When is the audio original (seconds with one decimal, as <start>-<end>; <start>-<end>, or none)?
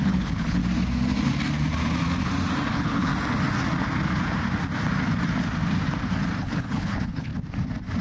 0.6-2.7; 3.1-6.4; 7.3-8.0